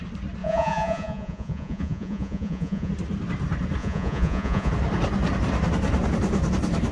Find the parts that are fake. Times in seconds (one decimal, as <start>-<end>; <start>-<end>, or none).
0.4-2.9; 3.8-4.7